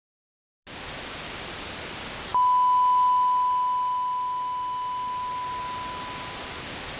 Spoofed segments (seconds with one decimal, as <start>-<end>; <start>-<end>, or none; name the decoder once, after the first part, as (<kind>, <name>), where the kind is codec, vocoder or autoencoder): none